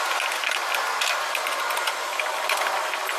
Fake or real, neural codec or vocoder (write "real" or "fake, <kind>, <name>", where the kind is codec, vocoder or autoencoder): real